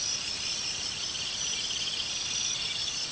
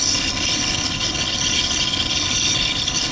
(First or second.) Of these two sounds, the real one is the first